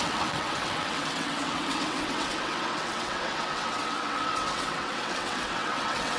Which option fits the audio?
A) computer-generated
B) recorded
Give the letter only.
A